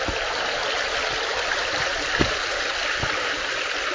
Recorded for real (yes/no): yes